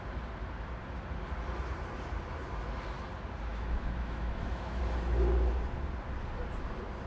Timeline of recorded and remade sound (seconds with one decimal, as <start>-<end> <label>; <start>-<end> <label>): 0.0-3.5 recorded; 3.5-4.8 remade; 4.8-7.1 recorded